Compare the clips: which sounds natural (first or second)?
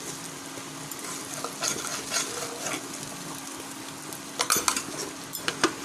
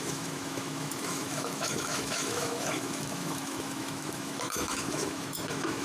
first